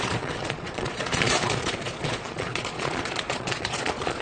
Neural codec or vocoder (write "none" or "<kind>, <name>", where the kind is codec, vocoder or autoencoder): vocoder, Vocos